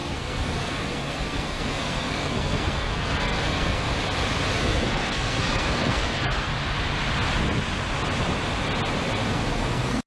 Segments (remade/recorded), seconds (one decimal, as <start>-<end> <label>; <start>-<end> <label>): 0.0-3.9 remade; 3.9-4.6 recorded; 4.6-6.5 remade; 6.5-9.3 recorded; 9.3-10.1 remade